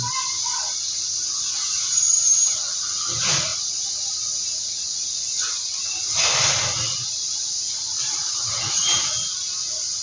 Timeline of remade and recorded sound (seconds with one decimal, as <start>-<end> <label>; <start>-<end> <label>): 0.0-7.9 recorded; 7.9-8.8 remade; 8.8-10.0 recorded